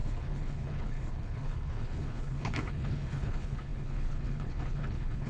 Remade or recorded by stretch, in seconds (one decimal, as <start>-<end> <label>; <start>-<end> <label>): 0.0-5.3 remade